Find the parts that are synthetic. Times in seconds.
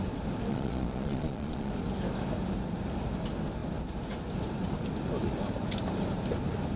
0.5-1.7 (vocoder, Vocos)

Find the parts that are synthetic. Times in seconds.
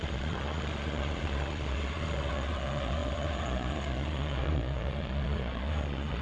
0.0-6.2 (vocoder, Vocos)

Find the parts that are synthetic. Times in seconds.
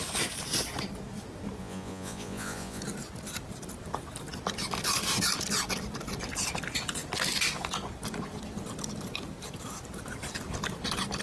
1.6-2.8 (vocoder, Vocos)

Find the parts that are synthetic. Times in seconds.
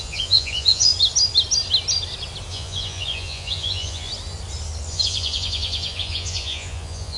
0.0-0.9 (vocoder, Vocos); 2.5-4.1; 4.9-7.2